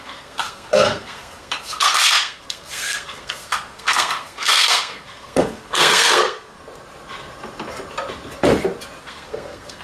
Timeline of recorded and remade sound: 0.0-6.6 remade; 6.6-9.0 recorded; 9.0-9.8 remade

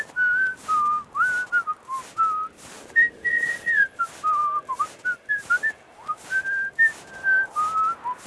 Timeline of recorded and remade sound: 0.0-3.3 recorded; 3.3-4.0 remade; 4.0-8.3 recorded

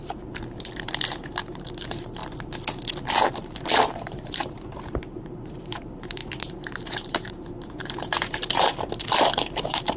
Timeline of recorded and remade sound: 0.0-2.2 remade; 2.2-3.3 recorded; 3.3-10.0 remade

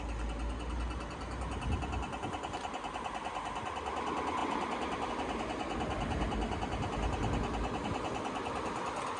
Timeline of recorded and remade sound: 0.0-9.2 recorded

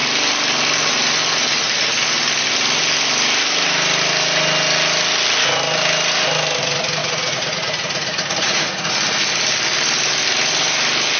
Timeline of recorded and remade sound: 0.0-7.0 recorded; 7.0-8.9 remade; 8.9-11.2 recorded